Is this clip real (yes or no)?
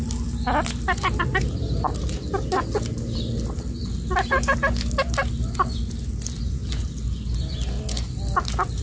yes